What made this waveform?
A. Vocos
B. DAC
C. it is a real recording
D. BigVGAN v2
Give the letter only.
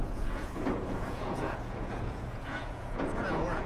A